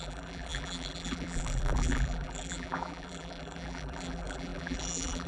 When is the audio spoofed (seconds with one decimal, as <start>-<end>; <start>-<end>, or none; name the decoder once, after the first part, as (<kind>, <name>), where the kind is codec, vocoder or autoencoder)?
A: 0.0-5.3 (vocoder, BigVGAN v2)